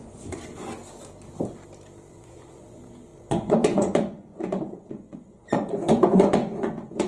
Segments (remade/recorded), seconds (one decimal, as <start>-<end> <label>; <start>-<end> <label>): 0.0-0.8 remade; 0.8-2.1 recorded; 2.1-7.1 remade